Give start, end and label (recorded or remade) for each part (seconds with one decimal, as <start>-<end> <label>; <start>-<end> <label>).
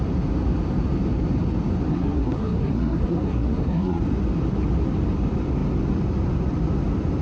0.0-1.9 recorded; 1.9-4.0 remade; 4.0-7.2 recorded